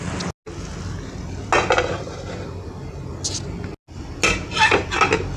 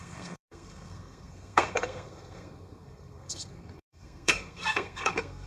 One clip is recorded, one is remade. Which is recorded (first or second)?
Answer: first